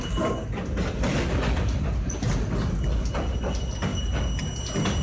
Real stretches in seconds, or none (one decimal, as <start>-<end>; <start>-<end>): 0.0-5.0